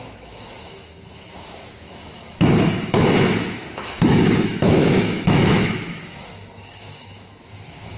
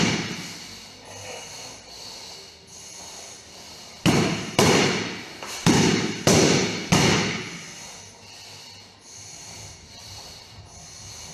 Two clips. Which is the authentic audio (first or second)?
second